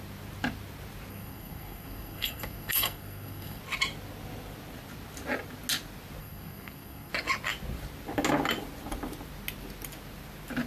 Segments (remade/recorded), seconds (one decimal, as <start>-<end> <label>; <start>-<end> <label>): 0.0-1.1 recorded; 1.1-3.6 remade; 3.6-6.2 recorded; 6.2-7.1 remade; 7.1-10.7 recorded